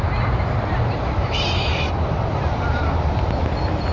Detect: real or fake fake